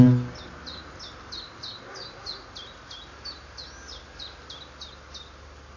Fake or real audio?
real